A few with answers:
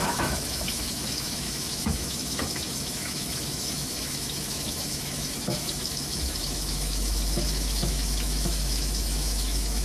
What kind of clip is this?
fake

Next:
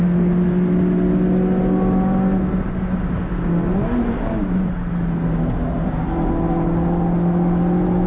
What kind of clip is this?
real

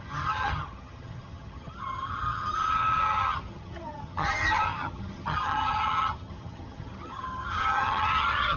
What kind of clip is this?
fake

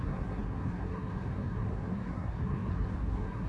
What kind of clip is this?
fake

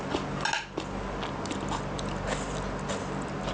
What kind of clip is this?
real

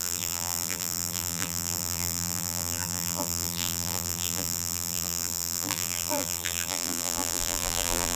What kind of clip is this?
fake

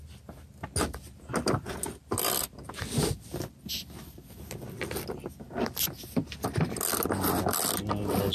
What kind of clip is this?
real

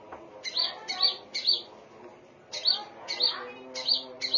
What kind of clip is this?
real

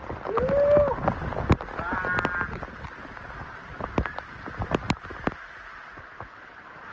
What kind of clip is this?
real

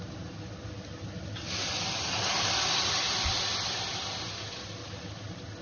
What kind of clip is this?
real